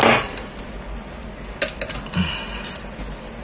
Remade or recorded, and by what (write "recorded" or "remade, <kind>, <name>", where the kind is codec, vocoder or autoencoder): recorded